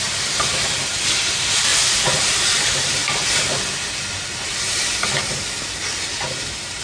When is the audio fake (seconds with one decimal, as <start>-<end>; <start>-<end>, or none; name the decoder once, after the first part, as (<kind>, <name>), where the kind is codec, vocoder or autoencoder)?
0.0-3.0 (vocoder, BigVGAN v2); 6.1-6.8